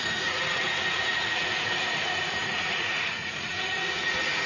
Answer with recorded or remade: remade